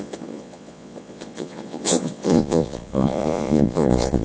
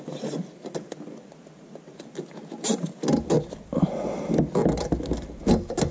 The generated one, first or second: first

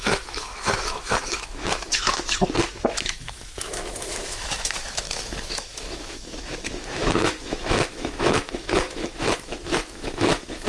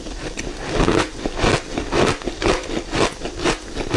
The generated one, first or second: first